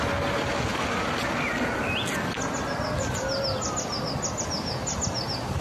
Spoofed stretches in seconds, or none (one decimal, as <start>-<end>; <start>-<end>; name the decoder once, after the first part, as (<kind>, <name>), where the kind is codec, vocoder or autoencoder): none